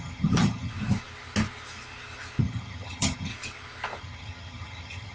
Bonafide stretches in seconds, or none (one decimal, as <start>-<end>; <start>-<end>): 0.7-2.4; 3.3-4.0